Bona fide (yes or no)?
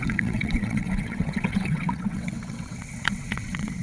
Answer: no